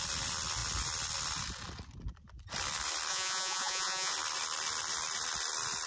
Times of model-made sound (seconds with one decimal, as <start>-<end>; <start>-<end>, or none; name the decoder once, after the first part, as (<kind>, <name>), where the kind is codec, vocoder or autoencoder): 3.1-4.1 (vocoder, Vocos)